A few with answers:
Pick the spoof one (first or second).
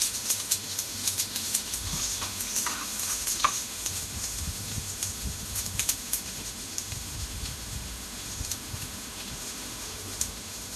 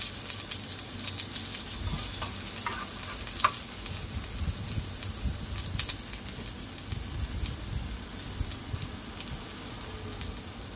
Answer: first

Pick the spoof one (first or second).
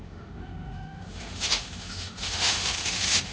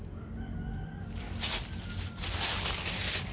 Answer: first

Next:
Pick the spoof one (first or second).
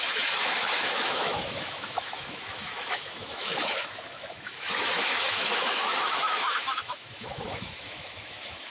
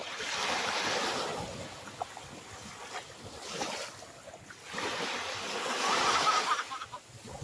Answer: first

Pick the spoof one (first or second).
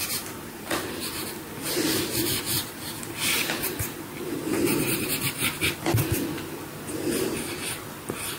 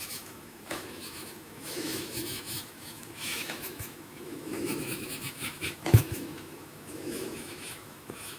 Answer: second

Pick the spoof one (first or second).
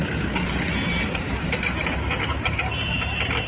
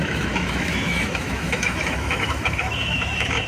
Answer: second